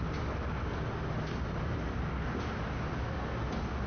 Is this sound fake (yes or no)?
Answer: no